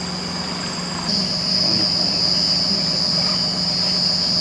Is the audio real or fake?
real